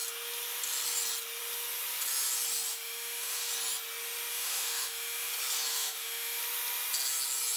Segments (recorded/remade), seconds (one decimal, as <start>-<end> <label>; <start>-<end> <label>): 0.0-2.7 recorded; 2.7-3.5 remade; 3.5-4.3 recorded; 4.3-5.3 remade; 5.3-5.7 recorded; 5.7-6.4 remade; 6.4-7.6 recorded